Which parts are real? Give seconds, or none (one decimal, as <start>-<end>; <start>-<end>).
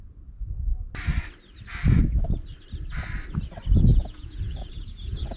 0.0-3.9